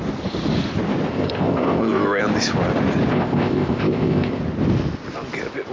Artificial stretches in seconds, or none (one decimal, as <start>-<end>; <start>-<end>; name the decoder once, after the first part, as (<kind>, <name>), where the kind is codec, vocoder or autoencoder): 1.1-2.2 (codec, ZipCodec); 3.1-4.4